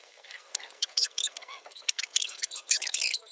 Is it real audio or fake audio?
fake